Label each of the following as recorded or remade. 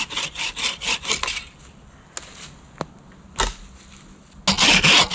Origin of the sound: recorded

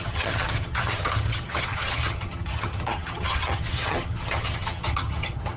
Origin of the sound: remade